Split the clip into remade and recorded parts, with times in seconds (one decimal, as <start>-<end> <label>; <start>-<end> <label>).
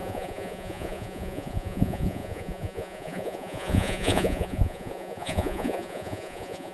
0.0-6.7 remade